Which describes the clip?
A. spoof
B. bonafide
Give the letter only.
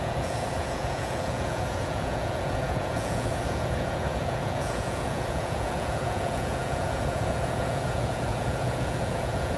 A